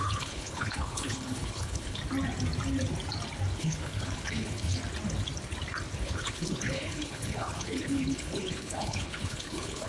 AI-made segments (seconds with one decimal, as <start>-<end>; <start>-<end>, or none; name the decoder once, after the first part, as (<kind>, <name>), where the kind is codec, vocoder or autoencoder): 0.0-2.0 (codec, HILCodec); 3.6-4.8; 6.0-9.9